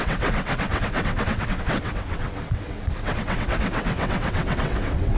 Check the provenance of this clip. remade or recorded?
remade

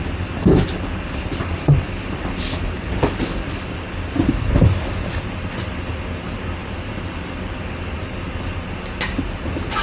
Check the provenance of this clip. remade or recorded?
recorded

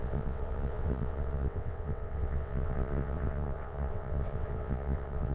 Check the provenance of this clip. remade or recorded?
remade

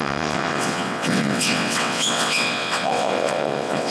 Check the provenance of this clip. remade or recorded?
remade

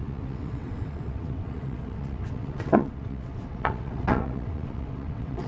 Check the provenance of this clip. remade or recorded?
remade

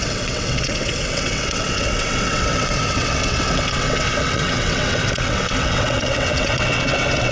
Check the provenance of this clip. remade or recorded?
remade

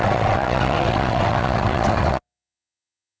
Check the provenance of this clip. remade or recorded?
remade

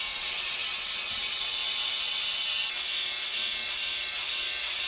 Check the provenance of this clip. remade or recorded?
remade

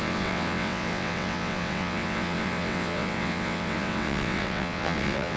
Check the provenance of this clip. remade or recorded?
remade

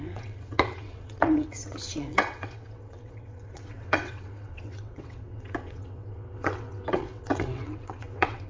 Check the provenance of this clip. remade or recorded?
remade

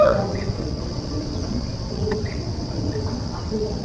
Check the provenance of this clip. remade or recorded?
remade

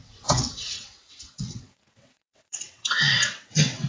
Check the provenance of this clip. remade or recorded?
remade